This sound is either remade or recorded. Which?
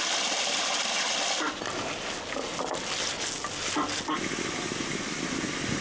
recorded